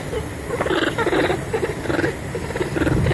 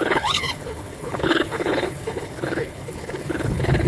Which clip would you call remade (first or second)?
second